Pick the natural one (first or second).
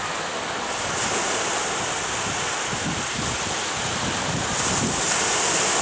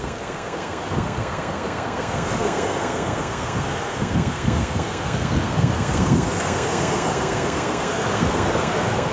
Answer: first